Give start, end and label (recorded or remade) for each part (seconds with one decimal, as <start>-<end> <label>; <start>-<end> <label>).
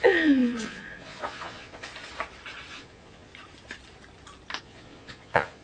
0.0-1.9 remade; 1.9-2.7 recorded; 2.7-3.3 remade; 3.3-4.6 recorded; 4.6-5.6 remade